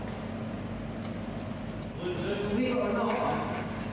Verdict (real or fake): real